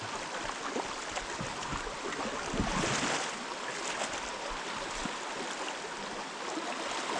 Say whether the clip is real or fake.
real